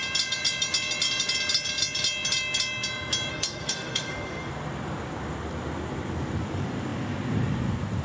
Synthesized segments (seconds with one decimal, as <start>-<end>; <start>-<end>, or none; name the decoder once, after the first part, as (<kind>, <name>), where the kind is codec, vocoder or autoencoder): 3.3-4.5 (codec, SNAC)